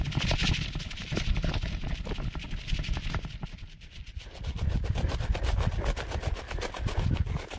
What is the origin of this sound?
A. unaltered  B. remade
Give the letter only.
B